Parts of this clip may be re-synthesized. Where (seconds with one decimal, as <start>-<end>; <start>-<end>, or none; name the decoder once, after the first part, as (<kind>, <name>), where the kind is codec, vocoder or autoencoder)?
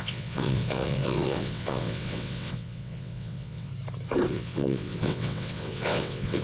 0.0-3.7 (vocoder, WaveNeXt); 4.3-6.4